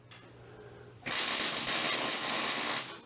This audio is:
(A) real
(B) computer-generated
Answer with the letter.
A